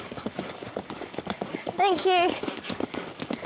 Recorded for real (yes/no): no